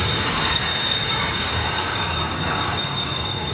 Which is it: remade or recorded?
remade